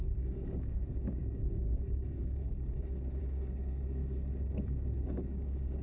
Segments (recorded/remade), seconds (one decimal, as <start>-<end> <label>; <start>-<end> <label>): 0.0-4.0 remade; 4.0-5.0 recorded; 5.0-5.8 remade